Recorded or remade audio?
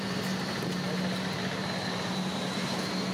recorded